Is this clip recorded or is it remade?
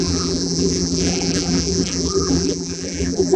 remade